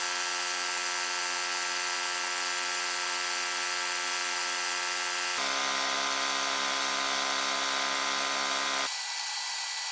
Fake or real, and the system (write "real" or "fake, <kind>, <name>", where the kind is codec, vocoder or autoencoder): real